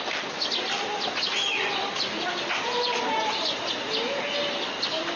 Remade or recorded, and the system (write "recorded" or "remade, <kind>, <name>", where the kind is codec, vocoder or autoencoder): recorded